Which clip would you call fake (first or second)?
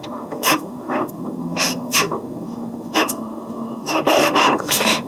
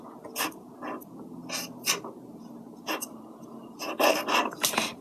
first